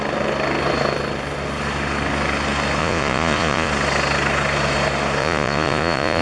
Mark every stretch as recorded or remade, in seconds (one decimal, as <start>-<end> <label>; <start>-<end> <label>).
0.0-2.8 recorded; 2.8-3.7 remade; 3.7-5.2 recorded; 5.2-6.2 remade